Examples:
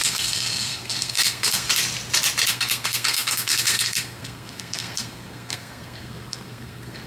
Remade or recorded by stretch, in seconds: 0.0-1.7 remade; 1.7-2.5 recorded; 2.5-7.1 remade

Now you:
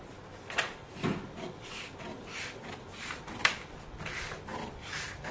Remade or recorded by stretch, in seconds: 0.0-5.3 recorded

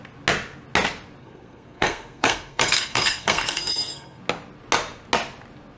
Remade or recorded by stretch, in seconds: 0.0-1.2 recorded; 1.2-4.2 remade; 4.2-5.8 recorded